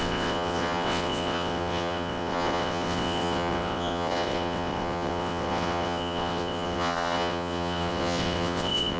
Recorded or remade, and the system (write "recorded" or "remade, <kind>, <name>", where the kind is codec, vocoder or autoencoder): remade, vocoder, WaveNeXt